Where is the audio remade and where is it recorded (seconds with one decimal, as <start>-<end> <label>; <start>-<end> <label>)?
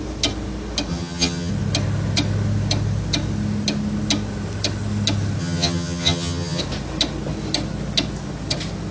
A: 0.0-0.9 recorded; 0.9-1.5 remade; 1.5-5.4 recorded; 5.4-6.6 remade; 6.6-8.9 recorded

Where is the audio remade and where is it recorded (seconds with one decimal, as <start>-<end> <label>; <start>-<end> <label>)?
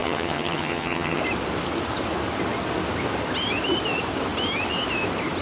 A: 0.0-1.2 remade; 1.2-5.4 recorded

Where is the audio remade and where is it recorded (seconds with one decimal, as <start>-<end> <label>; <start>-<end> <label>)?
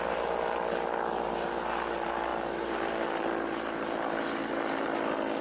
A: 0.0-5.4 recorded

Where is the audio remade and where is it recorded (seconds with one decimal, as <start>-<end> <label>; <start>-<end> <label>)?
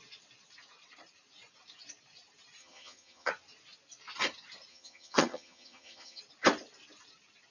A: 0.0-2.6 recorded; 2.6-3.3 remade; 3.3-4.7 recorded; 4.7-6.2 remade; 6.2-7.5 recorded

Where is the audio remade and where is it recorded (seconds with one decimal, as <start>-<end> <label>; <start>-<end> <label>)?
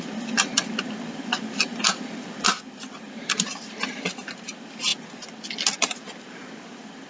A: 0.0-7.1 recorded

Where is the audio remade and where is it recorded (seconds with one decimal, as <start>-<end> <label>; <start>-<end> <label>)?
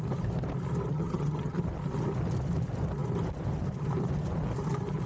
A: 0.0-0.9 recorded; 0.9-1.6 remade; 1.6-5.1 recorded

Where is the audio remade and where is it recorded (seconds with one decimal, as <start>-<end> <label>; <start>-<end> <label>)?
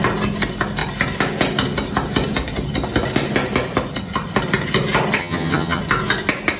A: 0.0-5.2 recorded; 5.2-5.8 remade; 5.8-6.6 recorded